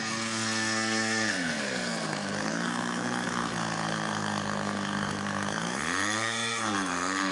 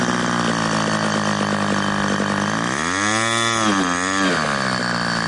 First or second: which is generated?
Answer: first